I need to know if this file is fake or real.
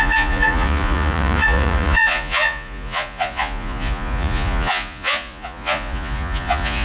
fake